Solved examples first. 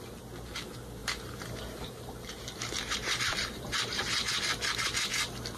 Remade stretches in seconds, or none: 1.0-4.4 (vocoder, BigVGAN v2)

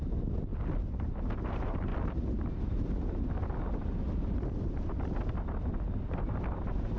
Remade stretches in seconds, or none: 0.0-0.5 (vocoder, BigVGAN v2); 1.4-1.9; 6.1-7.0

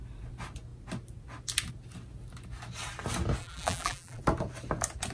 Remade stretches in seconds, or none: 3.4-4.2 (vocoder, BigVGAN v2)

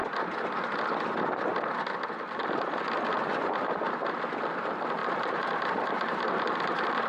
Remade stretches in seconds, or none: 5.0-7.1 (vocoder, BigVGAN v2)

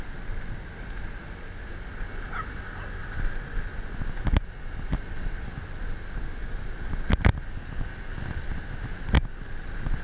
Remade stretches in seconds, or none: none

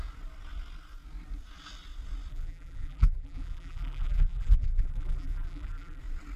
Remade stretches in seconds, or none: 2.3-6.0 (vocoder, BigVGAN v2)

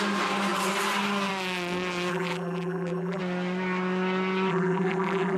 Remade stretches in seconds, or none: 2.1-3.2 (vocoder, BigVGAN v2); 4.5-5.4

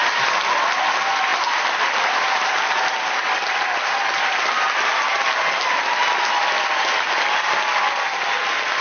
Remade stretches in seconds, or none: 1.3-4.0 (vocoder, BigVGAN v2)